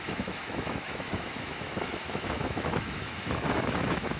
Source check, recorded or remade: remade